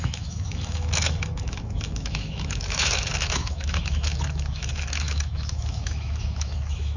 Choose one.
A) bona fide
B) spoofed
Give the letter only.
B